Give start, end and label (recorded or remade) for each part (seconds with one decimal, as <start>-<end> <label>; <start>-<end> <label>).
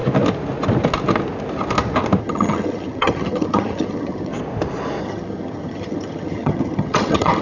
0.0-2.2 recorded; 2.2-4.3 remade; 4.3-5.0 recorded; 5.0-7.4 remade